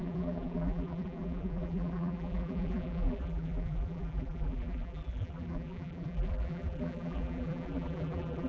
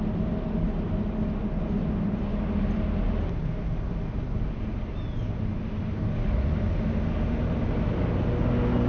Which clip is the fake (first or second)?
first